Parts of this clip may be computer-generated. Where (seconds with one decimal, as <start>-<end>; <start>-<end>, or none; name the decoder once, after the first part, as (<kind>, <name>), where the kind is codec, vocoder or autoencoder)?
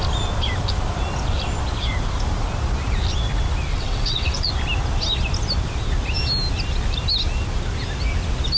3.7-4.5 (vocoder, WaveNeXt)